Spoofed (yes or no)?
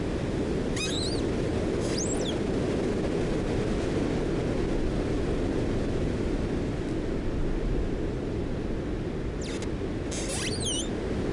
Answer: no